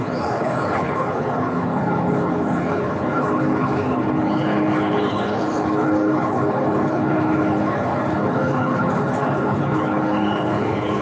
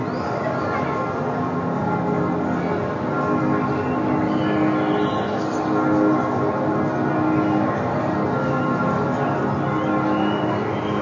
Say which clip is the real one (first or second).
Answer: second